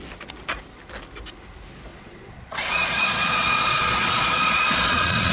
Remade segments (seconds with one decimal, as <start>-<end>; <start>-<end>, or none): 1.9-5.3